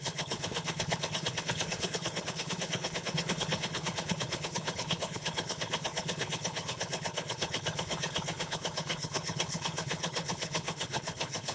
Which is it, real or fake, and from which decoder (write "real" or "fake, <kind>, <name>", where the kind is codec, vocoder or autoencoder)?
fake, codec, HILCodec